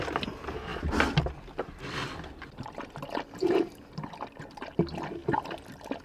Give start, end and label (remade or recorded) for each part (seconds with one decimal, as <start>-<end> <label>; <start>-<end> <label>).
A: 0.0-6.0 recorded